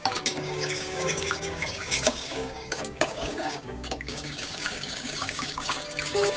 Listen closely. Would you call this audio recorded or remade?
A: remade